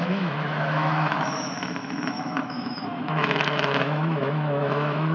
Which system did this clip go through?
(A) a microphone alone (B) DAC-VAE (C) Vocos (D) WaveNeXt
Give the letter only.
B